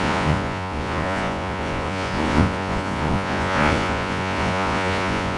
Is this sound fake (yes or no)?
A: yes